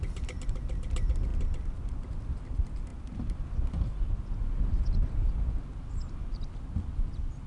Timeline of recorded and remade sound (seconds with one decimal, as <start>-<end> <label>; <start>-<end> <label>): 0.0-7.5 recorded